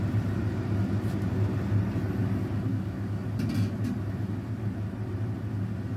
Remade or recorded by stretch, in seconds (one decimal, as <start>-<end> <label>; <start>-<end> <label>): 0.0-2.7 recorded; 2.7-3.3 remade; 3.3-6.0 recorded